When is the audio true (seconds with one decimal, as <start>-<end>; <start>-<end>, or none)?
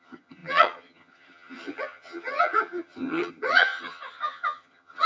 none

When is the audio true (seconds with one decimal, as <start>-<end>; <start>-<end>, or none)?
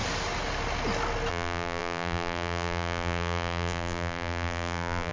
0.0-1.3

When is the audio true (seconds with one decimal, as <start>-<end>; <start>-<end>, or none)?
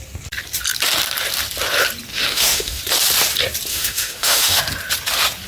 0.0-2.1; 2.8-3.7; 4.6-5.5